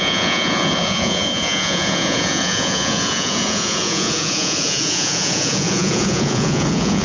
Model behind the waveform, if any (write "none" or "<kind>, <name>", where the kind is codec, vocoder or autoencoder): vocoder, Vocos